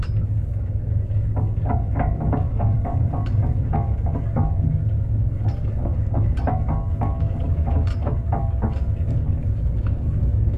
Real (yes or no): no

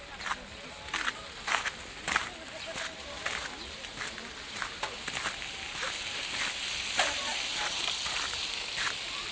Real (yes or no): yes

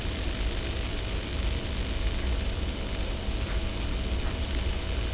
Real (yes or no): yes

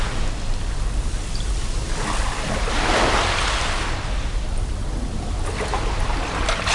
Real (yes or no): yes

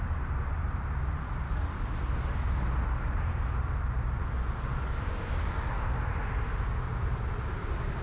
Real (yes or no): yes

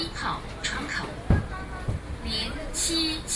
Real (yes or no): yes